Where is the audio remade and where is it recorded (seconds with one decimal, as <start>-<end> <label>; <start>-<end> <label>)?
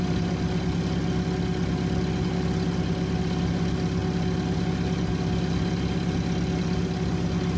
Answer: 0.0-7.6 recorded